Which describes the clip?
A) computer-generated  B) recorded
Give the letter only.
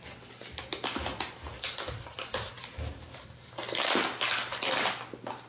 B